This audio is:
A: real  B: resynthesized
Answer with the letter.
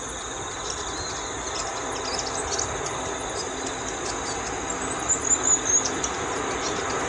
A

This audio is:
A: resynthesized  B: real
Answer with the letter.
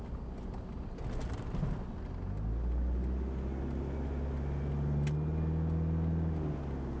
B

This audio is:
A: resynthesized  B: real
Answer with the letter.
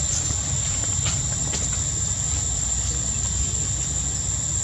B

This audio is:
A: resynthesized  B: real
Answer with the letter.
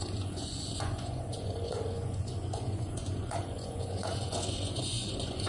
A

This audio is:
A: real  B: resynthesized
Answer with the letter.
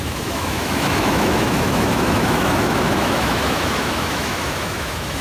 B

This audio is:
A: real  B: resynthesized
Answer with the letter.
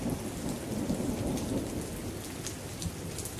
A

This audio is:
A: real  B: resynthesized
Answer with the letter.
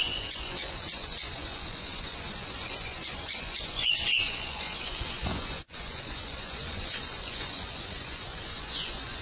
B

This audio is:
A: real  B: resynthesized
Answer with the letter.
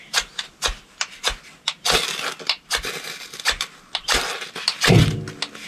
A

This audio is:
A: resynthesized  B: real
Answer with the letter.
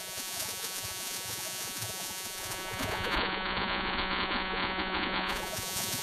A